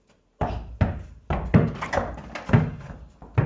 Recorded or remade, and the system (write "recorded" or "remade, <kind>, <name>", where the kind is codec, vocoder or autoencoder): recorded